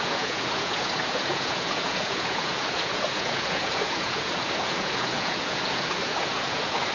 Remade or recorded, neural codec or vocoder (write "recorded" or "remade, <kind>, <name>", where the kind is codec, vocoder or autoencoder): remade, vocoder, Vocos